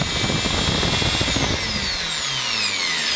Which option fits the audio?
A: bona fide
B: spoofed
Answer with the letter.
A